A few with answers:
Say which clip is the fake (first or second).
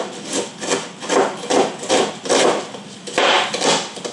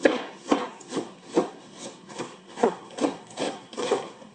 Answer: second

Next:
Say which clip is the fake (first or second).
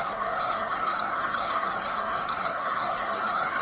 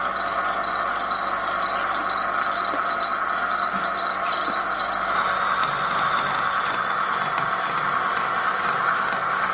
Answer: first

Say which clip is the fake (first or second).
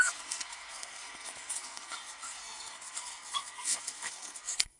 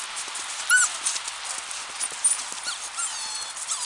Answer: first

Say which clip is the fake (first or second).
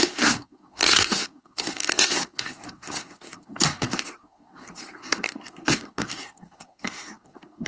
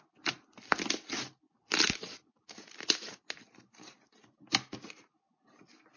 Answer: first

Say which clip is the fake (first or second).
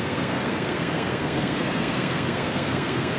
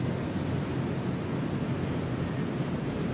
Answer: first